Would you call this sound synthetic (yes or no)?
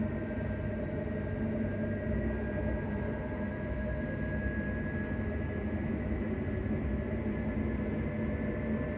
no